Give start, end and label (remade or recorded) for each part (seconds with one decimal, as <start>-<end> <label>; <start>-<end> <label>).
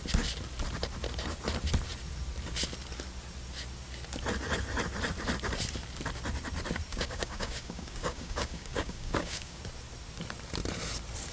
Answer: 0.0-6.9 recorded; 6.9-9.6 remade; 9.6-11.3 recorded